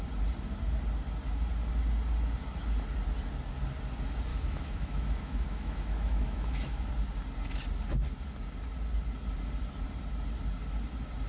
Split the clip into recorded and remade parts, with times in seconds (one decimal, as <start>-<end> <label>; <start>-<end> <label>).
0.0-4.3 recorded; 4.3-6.9 remade; 6.9-11.3 recorded